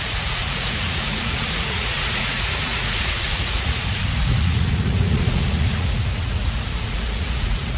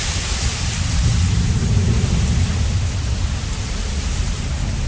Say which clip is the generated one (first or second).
first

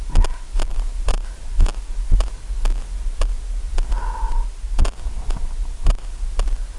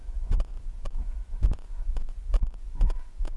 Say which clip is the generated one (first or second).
second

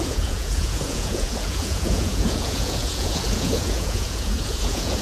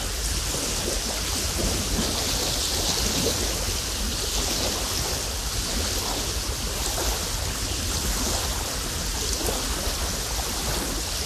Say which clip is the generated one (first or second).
first